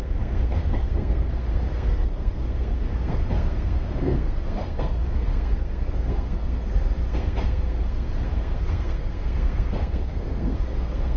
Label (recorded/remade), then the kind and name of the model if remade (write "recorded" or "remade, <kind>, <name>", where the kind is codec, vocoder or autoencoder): remade, codec, SNAC